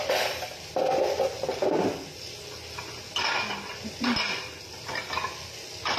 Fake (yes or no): no